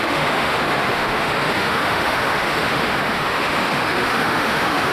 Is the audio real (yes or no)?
no